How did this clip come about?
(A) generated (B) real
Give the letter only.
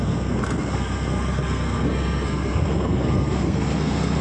A